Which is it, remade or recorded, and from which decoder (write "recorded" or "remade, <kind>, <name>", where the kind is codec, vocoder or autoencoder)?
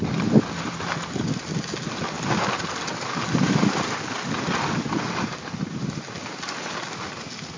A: recorded